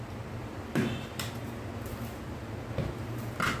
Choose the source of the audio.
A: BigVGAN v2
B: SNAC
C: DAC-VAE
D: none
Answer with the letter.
D